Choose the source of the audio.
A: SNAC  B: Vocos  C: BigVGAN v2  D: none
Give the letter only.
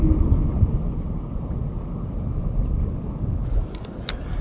D